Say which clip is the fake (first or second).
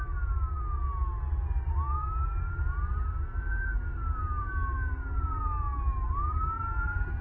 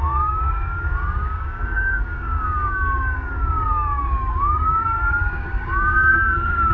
second